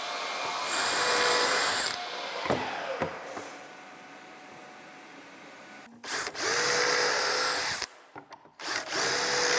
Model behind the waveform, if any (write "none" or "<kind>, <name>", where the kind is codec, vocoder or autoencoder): none